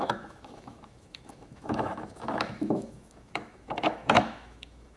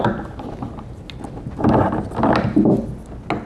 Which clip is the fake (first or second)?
first